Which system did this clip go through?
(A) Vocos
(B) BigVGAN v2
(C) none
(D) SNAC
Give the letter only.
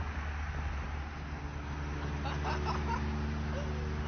C